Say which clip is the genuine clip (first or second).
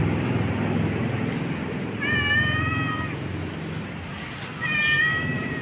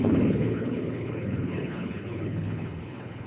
first